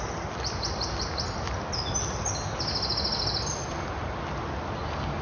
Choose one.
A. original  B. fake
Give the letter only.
A